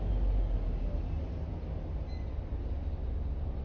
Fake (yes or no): no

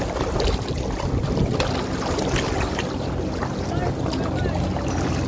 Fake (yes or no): no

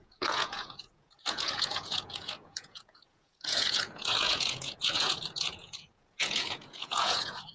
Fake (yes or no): yes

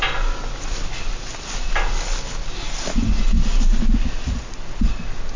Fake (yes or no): no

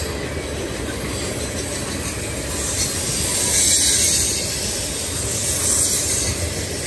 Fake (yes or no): no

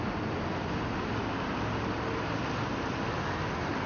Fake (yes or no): no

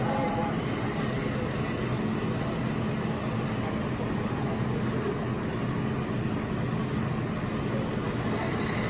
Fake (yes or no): no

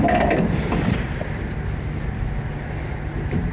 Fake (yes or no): no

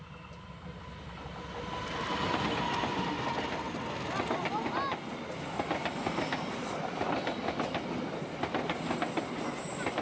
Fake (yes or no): no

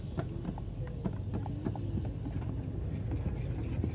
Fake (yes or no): no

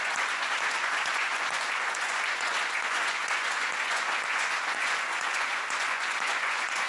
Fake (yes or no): yes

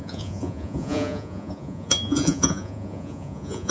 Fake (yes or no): yes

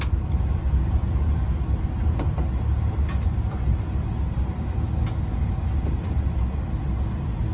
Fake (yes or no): no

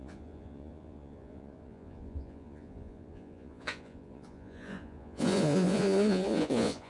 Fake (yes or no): yes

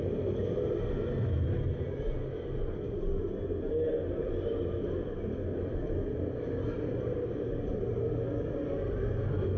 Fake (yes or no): no